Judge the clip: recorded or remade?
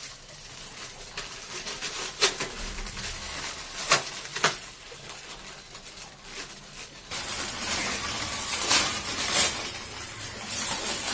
recorded